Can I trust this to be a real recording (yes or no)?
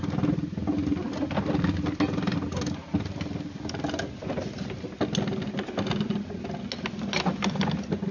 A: yes